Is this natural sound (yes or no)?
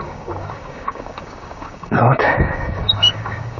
no